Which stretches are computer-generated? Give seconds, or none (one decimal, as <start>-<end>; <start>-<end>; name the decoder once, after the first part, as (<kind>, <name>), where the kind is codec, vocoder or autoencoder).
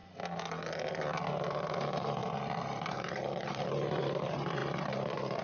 1.3-5.4 (vocoder, BigVGAN v2)